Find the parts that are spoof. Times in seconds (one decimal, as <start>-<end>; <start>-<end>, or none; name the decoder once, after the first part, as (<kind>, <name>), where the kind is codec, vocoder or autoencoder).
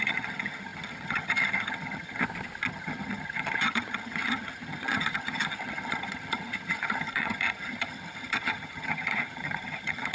0.0-2.2 (vocoder, HiFi-GAN); 2.7-10.1